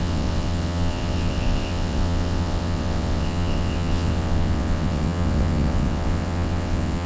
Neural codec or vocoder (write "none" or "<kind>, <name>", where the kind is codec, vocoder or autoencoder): vocoder, WaveNeXt